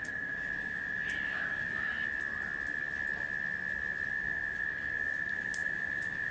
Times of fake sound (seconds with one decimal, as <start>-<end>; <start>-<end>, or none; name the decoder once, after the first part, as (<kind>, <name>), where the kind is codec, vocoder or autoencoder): 0.0-1.9 (codec, DAC); 4.1-6.3

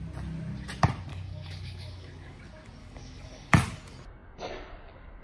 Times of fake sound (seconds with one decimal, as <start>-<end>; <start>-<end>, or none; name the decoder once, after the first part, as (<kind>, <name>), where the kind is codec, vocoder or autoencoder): 1.1-2.4 (codec, DAC); 2.8-3.5

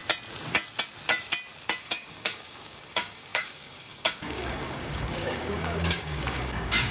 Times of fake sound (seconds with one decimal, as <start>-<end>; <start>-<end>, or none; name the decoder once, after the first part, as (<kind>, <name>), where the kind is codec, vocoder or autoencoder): 1.8-6.9 (codec, DAC)

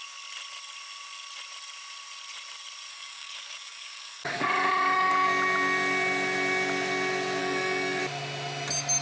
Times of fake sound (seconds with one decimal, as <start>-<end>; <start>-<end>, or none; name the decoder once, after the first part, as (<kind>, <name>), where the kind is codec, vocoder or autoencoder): 2.9-5.1 (codec, DAC); 7.4-8.0

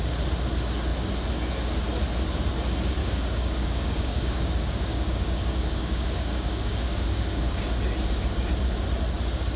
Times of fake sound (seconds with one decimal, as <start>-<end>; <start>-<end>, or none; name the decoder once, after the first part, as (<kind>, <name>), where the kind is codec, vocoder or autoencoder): 3.0-7.6 (codec, DAC)

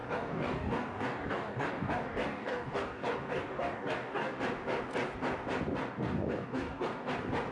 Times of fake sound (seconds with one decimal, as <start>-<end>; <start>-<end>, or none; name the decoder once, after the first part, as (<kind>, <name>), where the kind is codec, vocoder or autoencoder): 0.0-4.4 (codec, DAC); 5.8-7.1